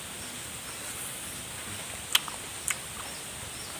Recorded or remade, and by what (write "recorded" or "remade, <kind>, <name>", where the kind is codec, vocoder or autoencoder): recorded